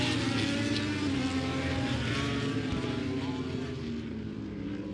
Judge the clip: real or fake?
real